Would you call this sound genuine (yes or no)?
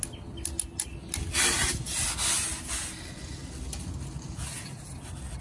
yes